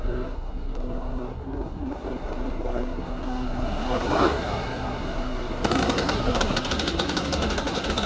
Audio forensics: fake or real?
fake